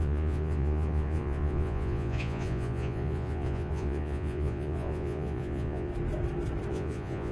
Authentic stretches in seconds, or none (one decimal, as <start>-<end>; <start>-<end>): 5.9-6.7